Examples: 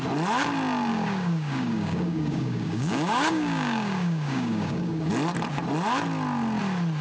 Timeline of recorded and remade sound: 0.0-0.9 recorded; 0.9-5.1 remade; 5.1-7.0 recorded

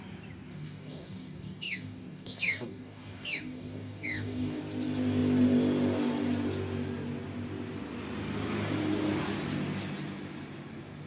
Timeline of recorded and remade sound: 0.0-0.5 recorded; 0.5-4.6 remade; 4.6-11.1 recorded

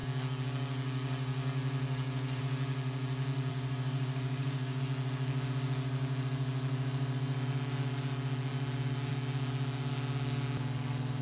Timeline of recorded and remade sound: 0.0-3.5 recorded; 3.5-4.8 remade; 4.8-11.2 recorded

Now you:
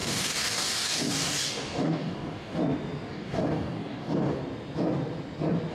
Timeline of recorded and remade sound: 0.0-2.6 remade; 2.6-3.1 recorded; 3.1-4.4 remade; 4.4-5.7 recorded

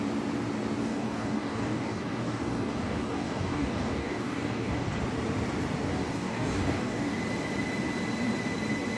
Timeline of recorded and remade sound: 0.0-0.8 recorded; 0.8-5.0 remade; 5.0-5.9 recorded; 5.9-7.2 remade; 7.2-9.0 recorded